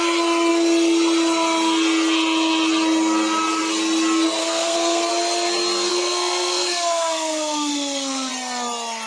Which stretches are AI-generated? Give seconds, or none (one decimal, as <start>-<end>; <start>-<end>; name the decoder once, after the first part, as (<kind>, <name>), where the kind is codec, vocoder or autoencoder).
4.4-5.1 (codec, SNAC); 5.9-8.3